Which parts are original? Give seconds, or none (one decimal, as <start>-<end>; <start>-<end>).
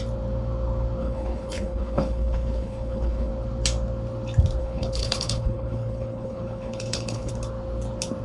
0.0-1.0; 3.3-4.6; 7.3-8.2